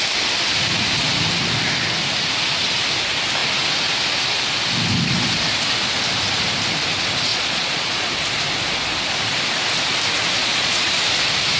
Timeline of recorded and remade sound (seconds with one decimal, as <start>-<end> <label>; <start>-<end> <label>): 0.0-7.3 recorded; 7.3-8.1 remade; 8.1-10.4 recorded; 10.4-10.9 remade; 10.9-11.6 recorded